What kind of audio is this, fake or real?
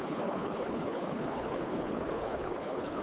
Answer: fake